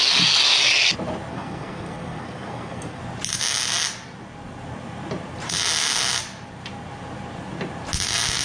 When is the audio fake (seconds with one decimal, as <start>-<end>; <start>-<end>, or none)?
1.3-3.0